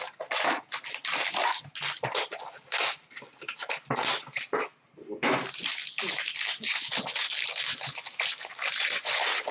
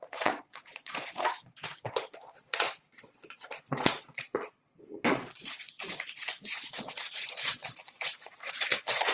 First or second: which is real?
first